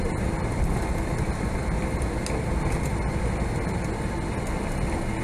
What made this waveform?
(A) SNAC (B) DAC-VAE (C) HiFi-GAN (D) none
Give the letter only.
D